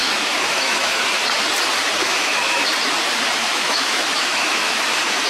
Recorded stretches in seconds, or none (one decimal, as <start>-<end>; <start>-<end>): 1.0-2.0; 2.6-3.4; 4.8-5.3